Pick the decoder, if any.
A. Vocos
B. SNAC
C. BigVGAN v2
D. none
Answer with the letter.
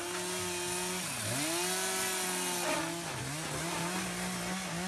D